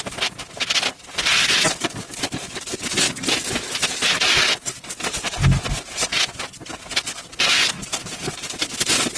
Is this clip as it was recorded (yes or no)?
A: yes